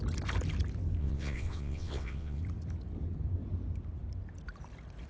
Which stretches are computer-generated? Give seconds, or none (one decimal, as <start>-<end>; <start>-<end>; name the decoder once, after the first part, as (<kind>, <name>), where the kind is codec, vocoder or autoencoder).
1.0-2.4 (vocoder, WaveNeXt)